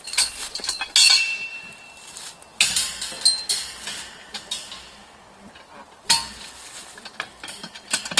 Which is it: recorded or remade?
recorded